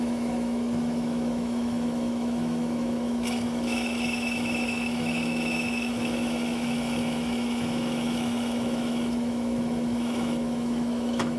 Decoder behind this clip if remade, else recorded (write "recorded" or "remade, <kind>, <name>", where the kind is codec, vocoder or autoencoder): remade, autoencoder, DAC-VAE